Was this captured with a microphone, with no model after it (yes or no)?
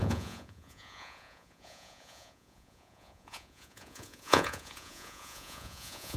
no